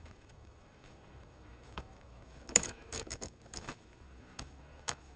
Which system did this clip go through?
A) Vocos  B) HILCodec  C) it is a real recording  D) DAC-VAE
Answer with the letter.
D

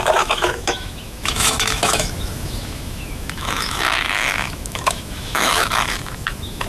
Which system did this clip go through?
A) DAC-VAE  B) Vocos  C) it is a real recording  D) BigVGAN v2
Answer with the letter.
A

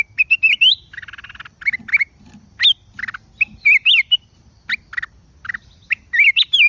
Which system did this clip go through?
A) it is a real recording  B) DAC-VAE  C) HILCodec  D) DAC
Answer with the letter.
A